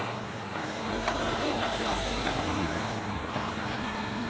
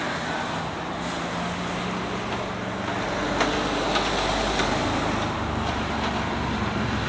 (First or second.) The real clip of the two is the second